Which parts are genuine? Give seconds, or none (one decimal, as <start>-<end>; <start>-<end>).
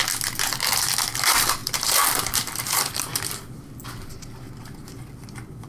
0.0-1.6; 3.4-5.7